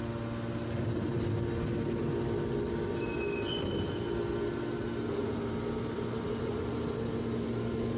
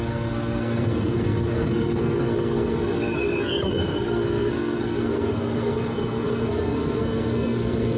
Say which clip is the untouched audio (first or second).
first